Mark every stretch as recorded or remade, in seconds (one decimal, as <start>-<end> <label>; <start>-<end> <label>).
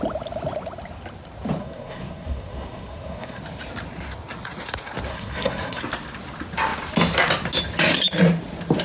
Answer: 0.0-1.6 recorded; 1.6-3.4 remade; 3.4-5.1 recorded; 5.1-5.8 remade; 5.8-8.8 recorded